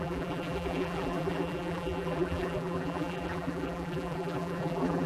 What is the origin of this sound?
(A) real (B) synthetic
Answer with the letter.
B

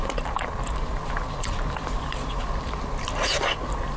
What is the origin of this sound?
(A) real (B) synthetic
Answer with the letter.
A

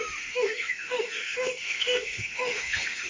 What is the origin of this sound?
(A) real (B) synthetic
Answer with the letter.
B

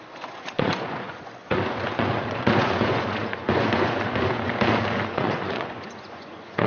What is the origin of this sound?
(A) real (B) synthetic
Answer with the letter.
B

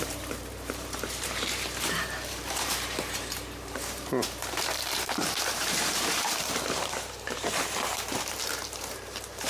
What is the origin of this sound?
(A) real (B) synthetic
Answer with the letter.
B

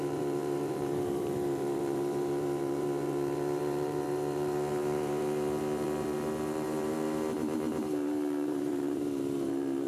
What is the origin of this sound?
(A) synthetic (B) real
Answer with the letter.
A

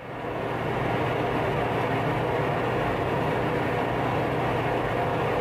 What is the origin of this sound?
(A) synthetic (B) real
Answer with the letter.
B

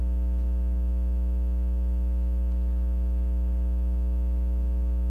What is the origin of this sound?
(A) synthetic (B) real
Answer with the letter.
B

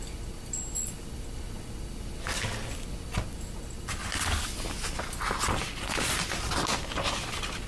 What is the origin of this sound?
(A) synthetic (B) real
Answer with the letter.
B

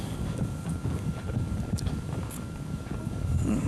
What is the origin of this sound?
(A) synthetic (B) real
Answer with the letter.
A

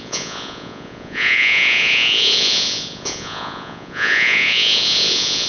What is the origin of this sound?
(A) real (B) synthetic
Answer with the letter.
B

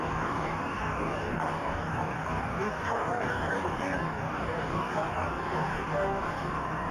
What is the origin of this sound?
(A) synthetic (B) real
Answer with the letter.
A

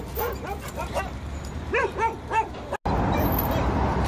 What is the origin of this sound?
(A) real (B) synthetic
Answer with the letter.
A